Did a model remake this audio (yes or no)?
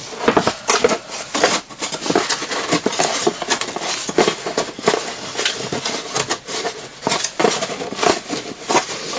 no